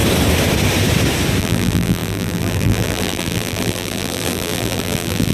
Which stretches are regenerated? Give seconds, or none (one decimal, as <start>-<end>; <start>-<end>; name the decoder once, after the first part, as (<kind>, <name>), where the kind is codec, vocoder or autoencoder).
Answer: 1.4-5.3 (vocoder, BigVGAN v2)